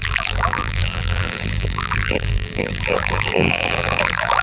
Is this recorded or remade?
remade